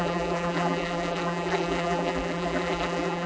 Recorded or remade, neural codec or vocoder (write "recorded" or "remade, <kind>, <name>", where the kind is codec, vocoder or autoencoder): remade, vocoder, BigVGAN v2